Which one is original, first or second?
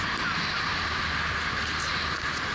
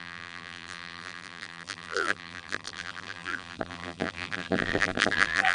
first